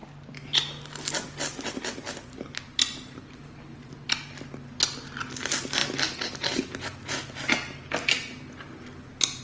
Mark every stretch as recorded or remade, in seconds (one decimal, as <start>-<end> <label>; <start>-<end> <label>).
0.0-9.4 recorded